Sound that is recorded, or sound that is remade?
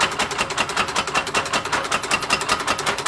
recorded